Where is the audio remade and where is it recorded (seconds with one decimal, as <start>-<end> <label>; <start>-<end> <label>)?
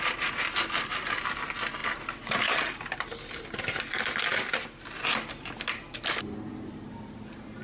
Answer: 0.0-7.6 recorded